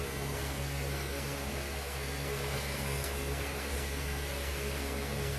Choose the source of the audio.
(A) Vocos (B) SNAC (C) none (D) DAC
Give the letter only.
B